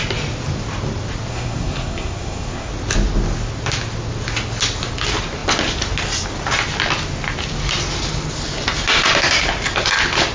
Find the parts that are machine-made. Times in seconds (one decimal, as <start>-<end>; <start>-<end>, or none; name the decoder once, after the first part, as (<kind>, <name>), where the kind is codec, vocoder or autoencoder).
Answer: 1.3-2.7 (codec, SNAC)

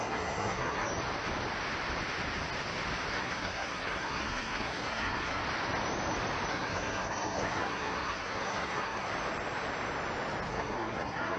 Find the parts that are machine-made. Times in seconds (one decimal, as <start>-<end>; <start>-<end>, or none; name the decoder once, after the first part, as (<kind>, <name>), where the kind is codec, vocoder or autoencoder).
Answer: 0.0-0.9 (codec, SNAC); 3.1-5.4; 6.5-9.1; 10.5-11.4

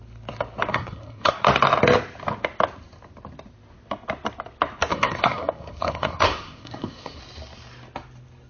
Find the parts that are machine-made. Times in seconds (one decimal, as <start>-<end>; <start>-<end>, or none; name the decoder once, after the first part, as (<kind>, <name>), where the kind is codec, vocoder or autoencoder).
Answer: 0.7-1.3 (codec, SNAC); 4.9-7.2